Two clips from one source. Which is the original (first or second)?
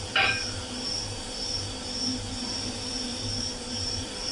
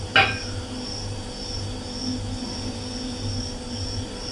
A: second